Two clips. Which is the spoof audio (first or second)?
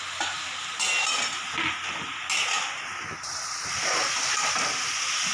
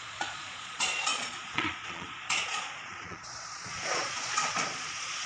second